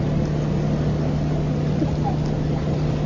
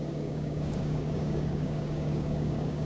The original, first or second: first